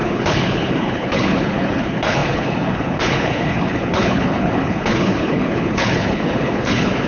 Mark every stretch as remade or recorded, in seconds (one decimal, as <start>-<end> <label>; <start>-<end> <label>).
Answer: 0.0-7.1 remade